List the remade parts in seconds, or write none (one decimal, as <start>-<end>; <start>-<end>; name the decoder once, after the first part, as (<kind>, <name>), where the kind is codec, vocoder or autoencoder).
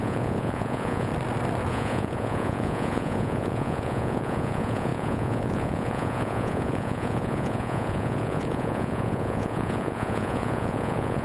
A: 0.0-1.1 (vocoder, Vocos); 1.7-11.2